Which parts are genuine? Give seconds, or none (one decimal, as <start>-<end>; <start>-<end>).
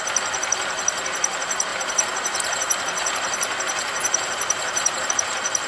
0.0-1.7; 5.1-5.7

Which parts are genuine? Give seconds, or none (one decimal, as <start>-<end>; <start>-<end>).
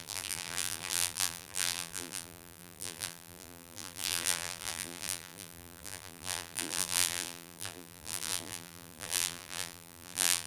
none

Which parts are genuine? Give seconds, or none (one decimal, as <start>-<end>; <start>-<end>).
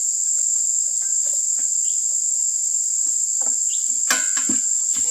0.0-5.1